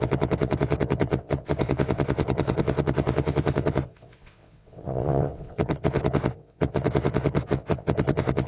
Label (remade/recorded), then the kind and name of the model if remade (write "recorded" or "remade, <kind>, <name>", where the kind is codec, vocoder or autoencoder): remade, vocoder, WaveNeXt